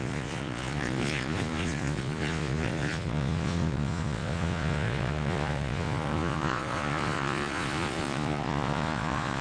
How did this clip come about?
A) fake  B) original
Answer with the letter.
A